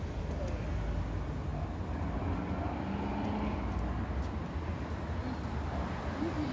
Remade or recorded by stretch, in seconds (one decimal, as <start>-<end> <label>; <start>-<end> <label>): 0.0-6.5 recorded